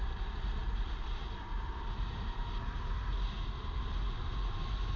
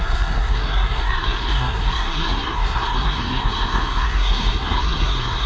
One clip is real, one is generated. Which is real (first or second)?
first